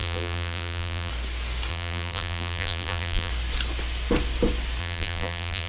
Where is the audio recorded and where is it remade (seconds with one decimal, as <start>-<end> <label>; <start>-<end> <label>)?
0.0-1.1 remade; 1.1-1.7 recorded; 1.7-3.3 remade; 3.3-4.8 recorded; 4.8-5.7 remade